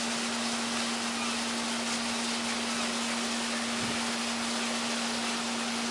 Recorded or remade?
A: recorded